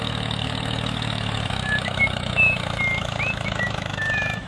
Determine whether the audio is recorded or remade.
remade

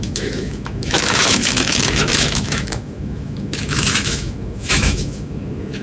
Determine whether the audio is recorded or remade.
remade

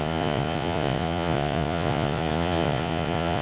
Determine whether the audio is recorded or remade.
remade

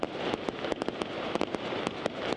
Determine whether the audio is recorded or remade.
recorded